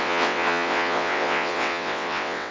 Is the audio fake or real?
fake